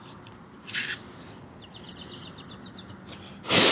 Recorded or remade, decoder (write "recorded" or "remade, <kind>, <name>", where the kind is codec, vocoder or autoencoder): recorded